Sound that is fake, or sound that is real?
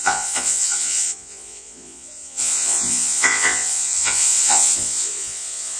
fake